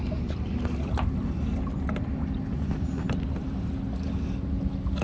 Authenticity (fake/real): real